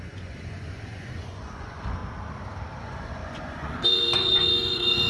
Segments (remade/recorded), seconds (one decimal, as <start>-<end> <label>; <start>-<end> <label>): 0.0-2.0 remade; 2.0-2.8 recorded; 2.8-5.1 remade